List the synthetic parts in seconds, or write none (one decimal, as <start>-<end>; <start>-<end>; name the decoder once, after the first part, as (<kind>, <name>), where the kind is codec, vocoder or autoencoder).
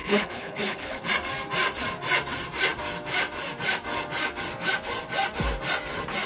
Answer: 0.0-1.1 (codec, HILCodec)